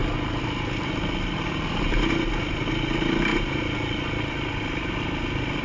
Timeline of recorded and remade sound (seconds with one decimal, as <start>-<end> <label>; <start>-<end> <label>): 0.0-5.6 recorded